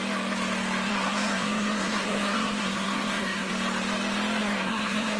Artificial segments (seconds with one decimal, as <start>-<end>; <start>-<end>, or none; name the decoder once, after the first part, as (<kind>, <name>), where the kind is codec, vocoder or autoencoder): 0.9-3.5 (codec, SNAC); 4.4-5.2